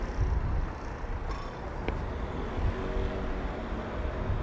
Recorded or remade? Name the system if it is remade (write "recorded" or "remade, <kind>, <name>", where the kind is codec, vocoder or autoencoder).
recorded